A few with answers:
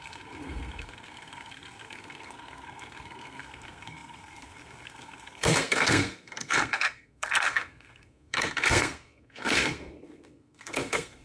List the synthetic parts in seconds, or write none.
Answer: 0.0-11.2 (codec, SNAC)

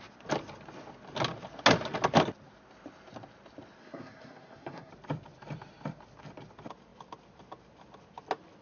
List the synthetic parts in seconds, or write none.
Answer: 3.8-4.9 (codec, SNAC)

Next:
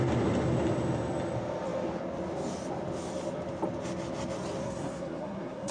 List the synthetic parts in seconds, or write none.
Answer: 4.6-5.7 (codec, SNAC)

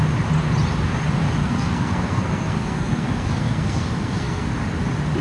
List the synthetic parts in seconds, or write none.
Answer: 1.4-4.5 (codec, SNAC)

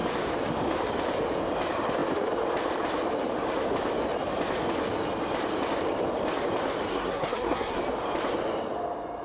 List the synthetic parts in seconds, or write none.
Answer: 6.9-7.8 (codec, SNAC)

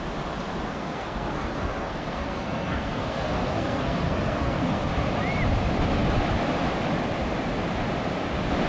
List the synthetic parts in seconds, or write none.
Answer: 0.7-4.9 (codec, SNAC)